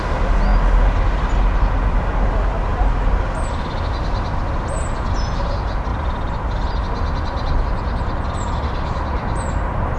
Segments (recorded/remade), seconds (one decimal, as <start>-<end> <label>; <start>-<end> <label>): 0.0-10.0 recorded